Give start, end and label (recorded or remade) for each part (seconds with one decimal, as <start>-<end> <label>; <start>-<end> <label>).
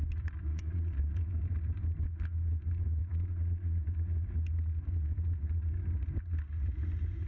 0.0-0.5 recorded; 0.5-1.1 remade; 1.1-3.0 recorded; 3.0-3.8 remade; 3.8-7.3 recorded